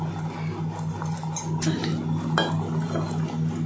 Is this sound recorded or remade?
recorded